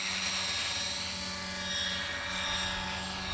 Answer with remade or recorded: recorded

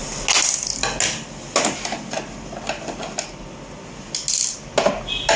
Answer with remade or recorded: recorded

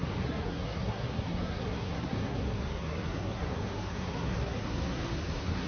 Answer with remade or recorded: remade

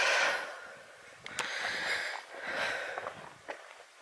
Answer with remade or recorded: recorded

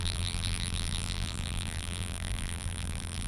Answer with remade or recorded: remade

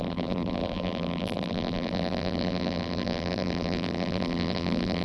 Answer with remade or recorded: remade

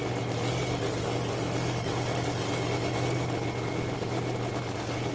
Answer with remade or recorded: recorded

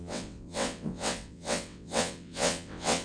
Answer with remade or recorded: remade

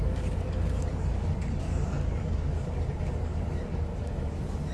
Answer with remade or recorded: remade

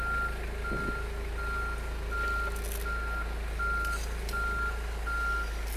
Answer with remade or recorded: recorded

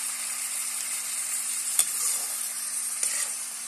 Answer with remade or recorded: remade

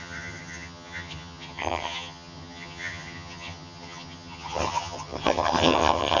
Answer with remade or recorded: remade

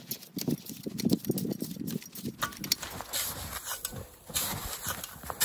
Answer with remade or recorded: recorded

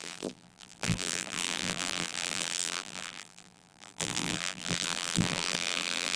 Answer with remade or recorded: remade